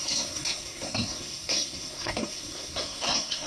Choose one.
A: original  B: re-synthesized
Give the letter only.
B